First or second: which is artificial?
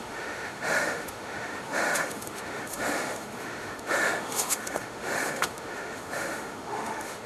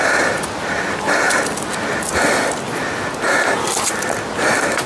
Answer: first